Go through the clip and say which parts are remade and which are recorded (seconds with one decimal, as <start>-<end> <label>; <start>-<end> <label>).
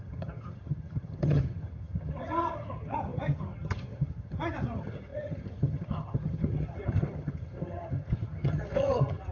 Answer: 0.0-9.3 remade